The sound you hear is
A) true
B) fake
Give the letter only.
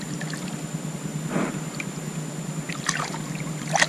A